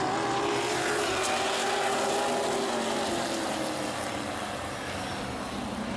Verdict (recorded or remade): recorded